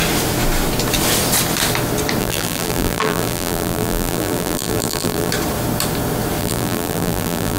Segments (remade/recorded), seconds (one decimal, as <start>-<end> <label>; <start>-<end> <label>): 0.0-2.2 recorded; 2.2-5.3 remade; 5.3-6.4 recorded; 6.4-7.6 remade